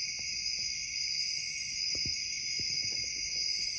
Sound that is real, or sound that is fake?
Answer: real